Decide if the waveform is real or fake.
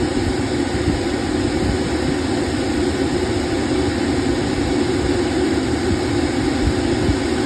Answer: real